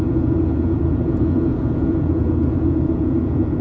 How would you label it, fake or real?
fake